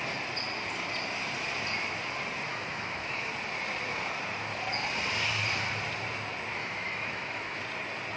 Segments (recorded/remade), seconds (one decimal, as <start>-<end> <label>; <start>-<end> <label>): 0.0-2.5 recorded; 2.5-3.3 remade; 3.3-6.6 recorded; 6.6-7.6 remade; 7.6-8.2 recorded